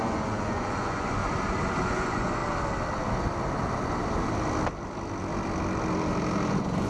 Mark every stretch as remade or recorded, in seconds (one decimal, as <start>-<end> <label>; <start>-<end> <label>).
0.0-1.2 remade; 1.2-1.9 recorded; 1.9-2.4 remade; 2.4-6.5 recorded; 6.5-6.9 remade